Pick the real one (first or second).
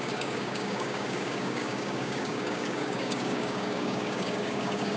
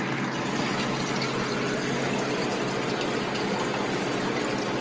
second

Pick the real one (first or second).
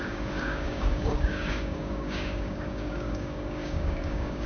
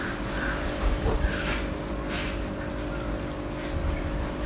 second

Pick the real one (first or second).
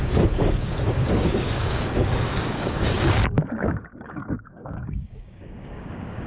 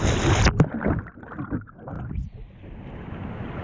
second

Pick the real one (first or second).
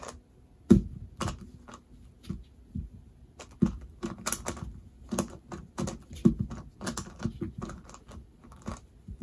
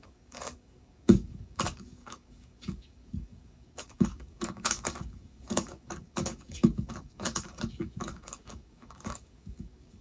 first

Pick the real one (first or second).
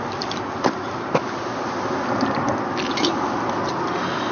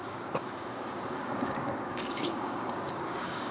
first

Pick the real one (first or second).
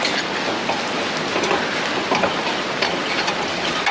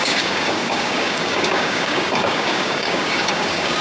first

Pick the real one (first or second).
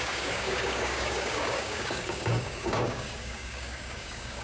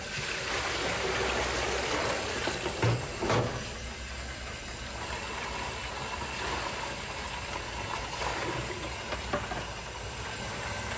second